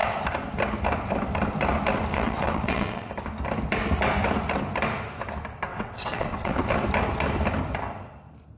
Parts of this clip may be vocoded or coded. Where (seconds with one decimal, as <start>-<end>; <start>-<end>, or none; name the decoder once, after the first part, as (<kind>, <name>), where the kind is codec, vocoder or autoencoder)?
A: 2.1-3.1 (vocoder, WaveNeXt); 5.7-6.7